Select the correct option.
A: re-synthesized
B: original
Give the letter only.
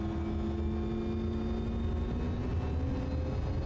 B